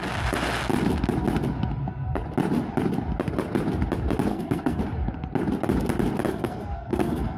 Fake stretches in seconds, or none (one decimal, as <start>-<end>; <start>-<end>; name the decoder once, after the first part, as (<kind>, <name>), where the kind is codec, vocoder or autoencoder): 4.3-4.8 (codec, SNAC); 6.3-7.4